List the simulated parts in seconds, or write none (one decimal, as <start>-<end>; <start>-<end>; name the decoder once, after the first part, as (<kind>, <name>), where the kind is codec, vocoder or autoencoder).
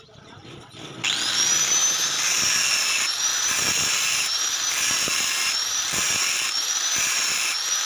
3.3-6.8 (vocoder, BigVGAN v2)